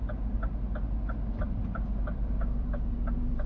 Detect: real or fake fake